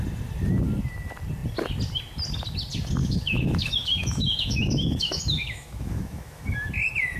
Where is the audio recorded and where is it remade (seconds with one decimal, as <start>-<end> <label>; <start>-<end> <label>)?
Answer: 0.0-3.0 recorded; 3.0-6.7 remade; 6.7-7.2 recorded